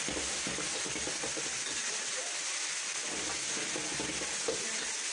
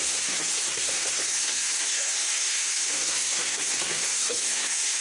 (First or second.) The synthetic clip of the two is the second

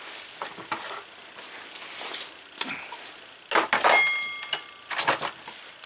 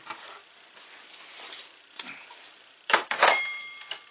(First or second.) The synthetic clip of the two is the second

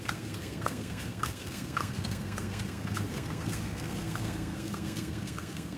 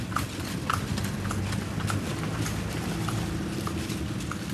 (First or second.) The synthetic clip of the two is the first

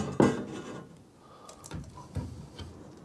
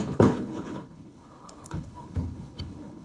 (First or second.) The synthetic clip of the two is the second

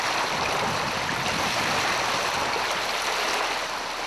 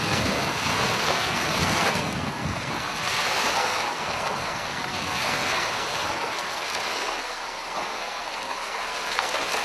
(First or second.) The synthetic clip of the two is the second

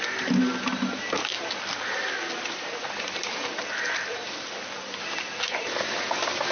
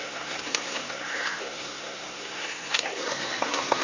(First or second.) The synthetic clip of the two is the second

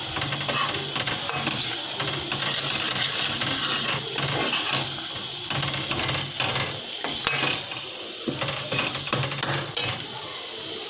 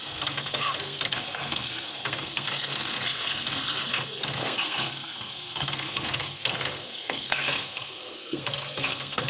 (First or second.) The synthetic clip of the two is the second